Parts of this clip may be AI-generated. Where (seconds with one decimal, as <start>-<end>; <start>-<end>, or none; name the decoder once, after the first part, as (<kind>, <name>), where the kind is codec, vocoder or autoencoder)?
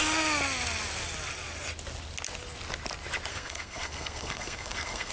3.3-5.1 (codec, SNAC)